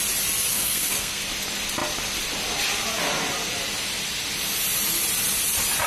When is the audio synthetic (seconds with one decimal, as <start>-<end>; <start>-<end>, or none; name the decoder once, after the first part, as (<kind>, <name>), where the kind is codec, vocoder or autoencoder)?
0.5-1.2 (codec, SNAC)